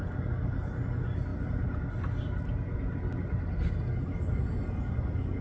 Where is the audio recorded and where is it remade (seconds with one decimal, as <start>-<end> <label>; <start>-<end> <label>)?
0.0-5.4 recorded

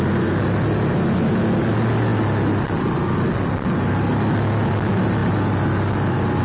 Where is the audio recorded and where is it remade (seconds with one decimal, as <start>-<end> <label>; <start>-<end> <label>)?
0.0-6.4 recorded

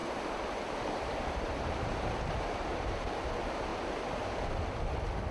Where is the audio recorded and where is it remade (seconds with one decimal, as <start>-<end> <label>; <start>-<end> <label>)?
0.0-3.2 remade; 3.2-3.7 recorded; 3.7-4.8 remade; 4.8-5.3 recorded

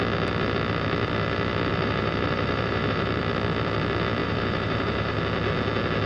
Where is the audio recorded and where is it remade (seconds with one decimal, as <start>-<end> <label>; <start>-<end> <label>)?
0.0-1.7 recorded; 1.7-3.2 remade; 3.2-4.2 recorded; 4.2-5.2 remade; 5.2-6.1 recorded

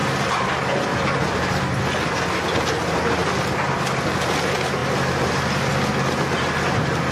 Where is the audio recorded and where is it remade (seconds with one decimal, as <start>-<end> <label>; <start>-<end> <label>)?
0.0-1.2 remade; 1.2-4.8 recorded; 4.8-5.7 remade; 5.7-7.1 recorded

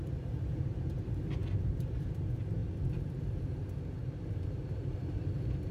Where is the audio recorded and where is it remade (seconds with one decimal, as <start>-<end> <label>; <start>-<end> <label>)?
0.0-2.6 remade; 2.6-5.7 recorded